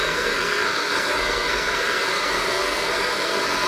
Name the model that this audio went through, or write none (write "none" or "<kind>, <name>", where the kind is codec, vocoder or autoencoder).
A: codec, SNAC